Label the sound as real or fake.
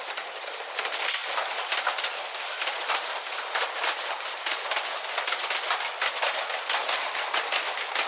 real